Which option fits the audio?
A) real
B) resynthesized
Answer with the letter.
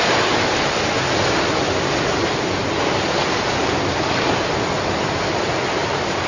A